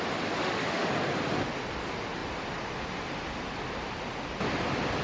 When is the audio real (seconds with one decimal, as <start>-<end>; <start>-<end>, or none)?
0.0-0.4; 0.9-5.0